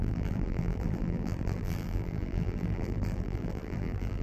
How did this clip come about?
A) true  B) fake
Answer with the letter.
B